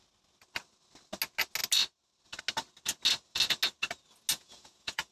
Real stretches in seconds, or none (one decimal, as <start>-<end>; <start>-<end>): 0.0-4.3